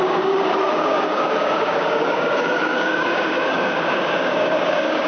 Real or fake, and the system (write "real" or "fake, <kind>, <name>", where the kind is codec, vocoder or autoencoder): fake, codec, DAC